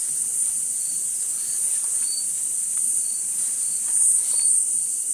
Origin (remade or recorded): remade